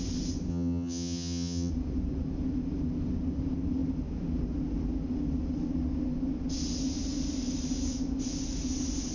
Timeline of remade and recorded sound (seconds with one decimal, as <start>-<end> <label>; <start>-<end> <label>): 0.0-0.5 recorded; 0.5-1.7 remade; 1.7-9.1 recorded